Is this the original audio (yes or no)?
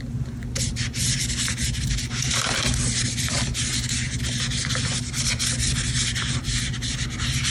yes